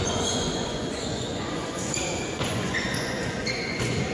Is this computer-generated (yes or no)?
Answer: yes